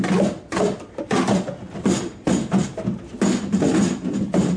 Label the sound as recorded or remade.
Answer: recorded